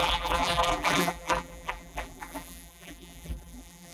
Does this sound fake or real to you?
fake